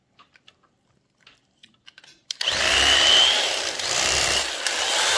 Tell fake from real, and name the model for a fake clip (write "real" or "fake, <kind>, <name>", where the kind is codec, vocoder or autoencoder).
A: fake, vocoder, BigVGAN v2